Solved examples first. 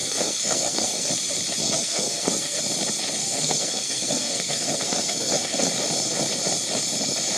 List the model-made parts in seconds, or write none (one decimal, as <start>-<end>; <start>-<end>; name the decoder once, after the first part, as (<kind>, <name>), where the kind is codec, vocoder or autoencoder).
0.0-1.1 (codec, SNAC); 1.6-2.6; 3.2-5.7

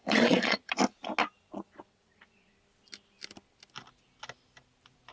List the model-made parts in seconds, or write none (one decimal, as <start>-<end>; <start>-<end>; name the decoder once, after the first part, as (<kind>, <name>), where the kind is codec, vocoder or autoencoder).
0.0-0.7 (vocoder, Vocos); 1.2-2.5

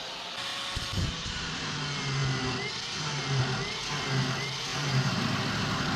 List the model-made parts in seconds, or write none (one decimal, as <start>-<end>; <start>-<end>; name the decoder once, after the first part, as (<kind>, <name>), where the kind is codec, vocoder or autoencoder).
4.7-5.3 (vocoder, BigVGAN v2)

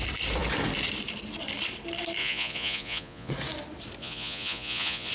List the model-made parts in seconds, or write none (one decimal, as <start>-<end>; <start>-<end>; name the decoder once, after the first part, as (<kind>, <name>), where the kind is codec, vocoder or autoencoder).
2.2-3.3 (vocoder, Vocos); 4.0-5.1

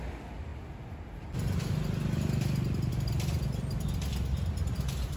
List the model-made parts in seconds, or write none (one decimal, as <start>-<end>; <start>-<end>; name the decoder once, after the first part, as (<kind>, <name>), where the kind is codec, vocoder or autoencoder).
none

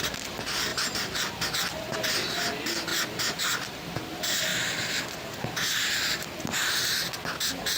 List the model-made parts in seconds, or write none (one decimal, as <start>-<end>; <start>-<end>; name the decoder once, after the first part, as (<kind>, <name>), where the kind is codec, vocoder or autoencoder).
none